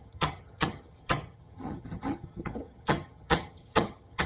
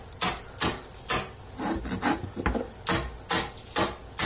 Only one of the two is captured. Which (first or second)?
second